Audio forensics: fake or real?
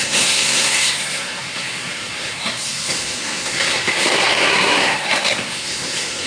fake